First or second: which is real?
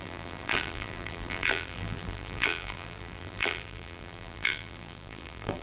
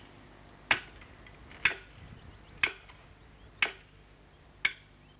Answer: second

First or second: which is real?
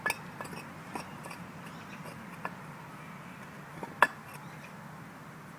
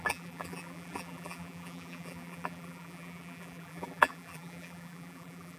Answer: first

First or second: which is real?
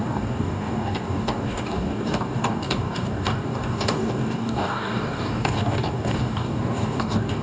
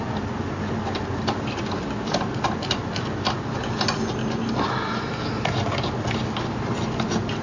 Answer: second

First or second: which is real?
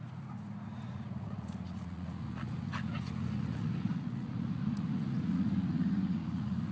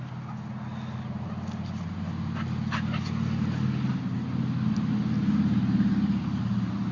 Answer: second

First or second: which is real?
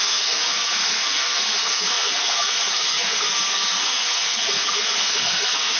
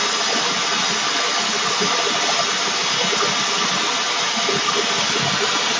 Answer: second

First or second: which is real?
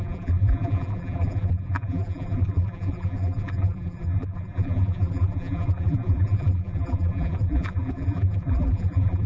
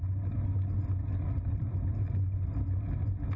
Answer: second